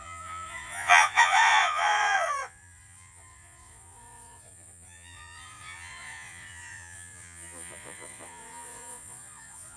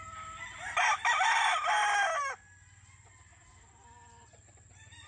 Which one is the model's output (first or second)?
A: first